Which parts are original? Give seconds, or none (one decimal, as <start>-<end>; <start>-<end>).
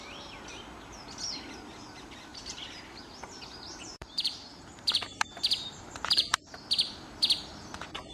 0.0-2.3; 3.2-3.7; 6.6-8.1